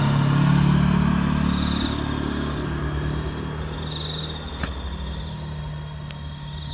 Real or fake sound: real